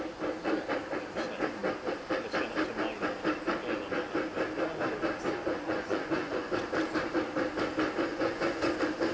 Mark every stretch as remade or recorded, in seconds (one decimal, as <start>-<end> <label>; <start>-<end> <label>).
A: 0.0-5.4 recorded; 5.4-6.5 remade; 6.5-8.1 recorded; 8.1-8.7 remade; 8.7-9.1 recorded